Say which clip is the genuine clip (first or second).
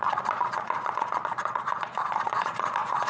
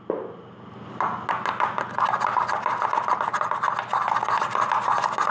second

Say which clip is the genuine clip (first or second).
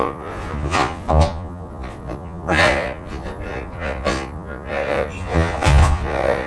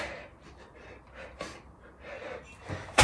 second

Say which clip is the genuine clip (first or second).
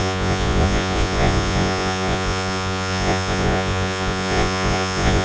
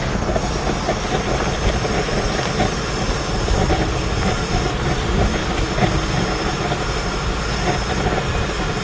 second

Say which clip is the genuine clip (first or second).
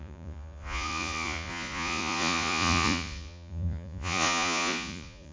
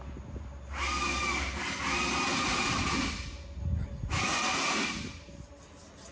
second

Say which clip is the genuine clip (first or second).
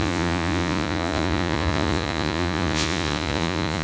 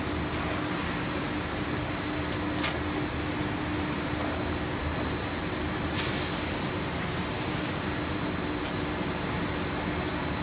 second